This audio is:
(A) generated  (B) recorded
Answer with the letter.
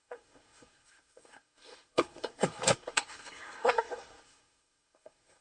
A